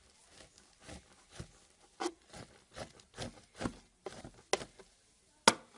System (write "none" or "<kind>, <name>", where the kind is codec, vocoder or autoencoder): none